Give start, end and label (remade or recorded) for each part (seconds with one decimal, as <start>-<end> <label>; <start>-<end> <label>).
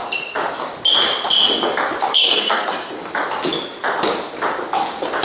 0.0-2.1 recorded; 2.1-2.7 remade; 2.7-5.2 recorded